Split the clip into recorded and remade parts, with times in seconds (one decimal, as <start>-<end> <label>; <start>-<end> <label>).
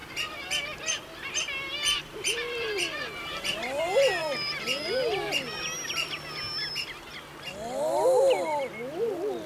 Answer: 0.0-3.8 remade; 3.8-4.2 recorded; 4.2-6.7 remade; 6.7-9.5 recorded